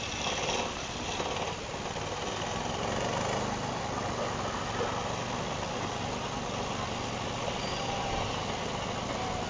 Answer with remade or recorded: recorded